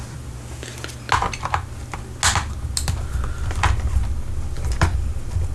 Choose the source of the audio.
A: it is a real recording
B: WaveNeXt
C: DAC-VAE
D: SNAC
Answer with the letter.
A